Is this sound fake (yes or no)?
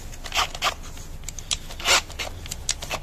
no